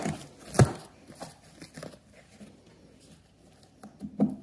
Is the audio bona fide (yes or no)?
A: yes